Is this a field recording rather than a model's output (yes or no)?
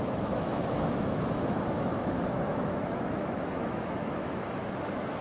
no